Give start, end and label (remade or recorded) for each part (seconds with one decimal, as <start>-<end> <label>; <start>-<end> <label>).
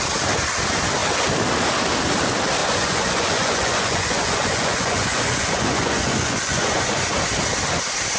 0.0-2.6 recorded; 2.6-7.1 remade; 7.1-8.2 recorded